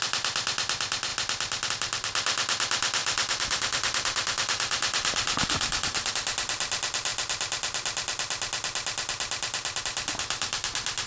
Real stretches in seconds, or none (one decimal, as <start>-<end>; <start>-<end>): 0.0-3.0; 6.1-11.1